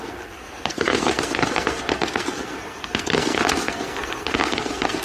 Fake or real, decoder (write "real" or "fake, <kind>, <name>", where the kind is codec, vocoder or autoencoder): fake, codec, SNAC